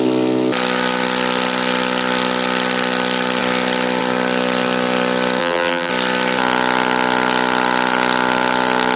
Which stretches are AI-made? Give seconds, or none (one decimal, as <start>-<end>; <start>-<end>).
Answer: 5.4-5.9